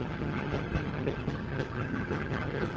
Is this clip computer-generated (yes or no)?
yes